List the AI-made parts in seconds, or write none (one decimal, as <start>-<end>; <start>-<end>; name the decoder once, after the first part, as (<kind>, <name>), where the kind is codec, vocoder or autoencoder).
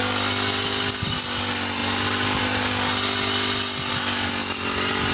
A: none